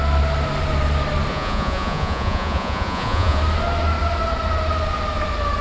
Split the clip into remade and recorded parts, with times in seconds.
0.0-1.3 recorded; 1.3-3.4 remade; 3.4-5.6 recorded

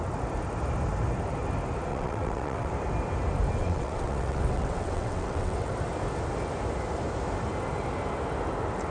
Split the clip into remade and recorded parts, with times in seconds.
0.0-1.9 recorded; 1.9-2.7 remade; 2.7-3.6 recorded; 3.6-5.7 remade; 5.7-8.9 recorded

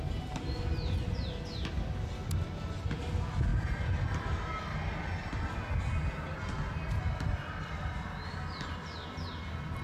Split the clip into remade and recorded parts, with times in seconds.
0.0-9.8 recorded

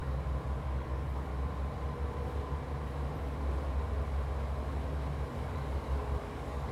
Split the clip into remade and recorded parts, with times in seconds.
0.0-1.3 remade; 1.3-5.3 recorded; 5.3-6.7 remade

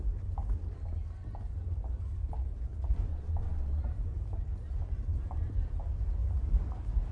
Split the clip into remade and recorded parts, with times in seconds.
0.0-3.1 recorded; 3.1-3.8 remade; 3.8-7.1 recorded

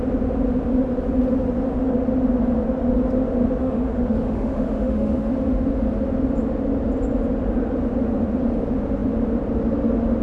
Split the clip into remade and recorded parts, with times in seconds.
0.0-3.6 recorded; 3.6-5.3 remade; 5.3-10.2 recorded